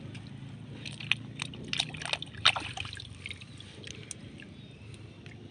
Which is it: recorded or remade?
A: recorded